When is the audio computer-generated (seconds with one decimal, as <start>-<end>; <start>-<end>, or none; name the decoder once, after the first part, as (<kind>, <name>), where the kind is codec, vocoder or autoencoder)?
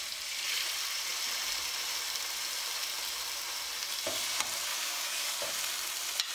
4.7-5.5 (codec, DAC)